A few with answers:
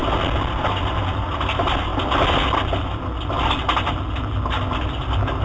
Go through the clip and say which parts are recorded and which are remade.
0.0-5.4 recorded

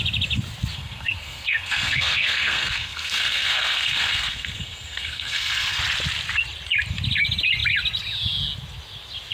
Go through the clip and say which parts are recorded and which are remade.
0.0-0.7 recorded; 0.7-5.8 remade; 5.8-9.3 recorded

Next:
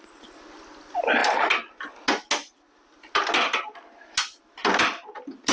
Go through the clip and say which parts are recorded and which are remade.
0.0-5.5 recorded

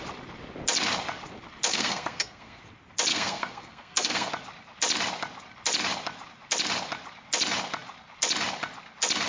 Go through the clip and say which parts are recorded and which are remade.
0.0-1.7 recorded; 1.7-2.6 remade; 2.6-3.1 recorded; 3.1-4.3 remade; 4.3-9.3 recorded

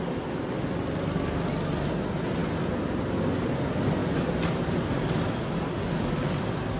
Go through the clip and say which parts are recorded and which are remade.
0.0-6.8 recorded

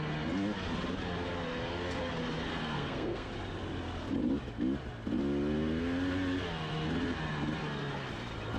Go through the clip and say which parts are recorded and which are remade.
0.0-2.5 recorded; 2.5-3.3 remade; 3.3-8.6 recorded